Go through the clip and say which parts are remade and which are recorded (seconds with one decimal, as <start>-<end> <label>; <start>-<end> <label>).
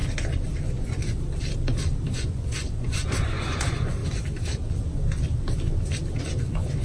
0.0-0.6 recorded; 0.6-1.0 remade; 1.0-2.1 recorded; 2.1-4.0 remade; 4.0-6.2 recorded; 6.2-6.8 remade